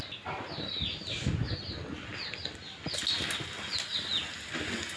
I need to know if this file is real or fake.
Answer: real